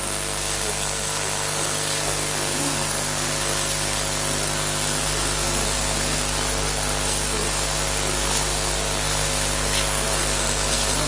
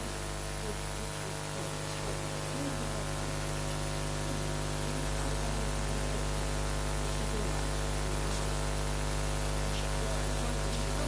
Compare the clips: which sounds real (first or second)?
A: second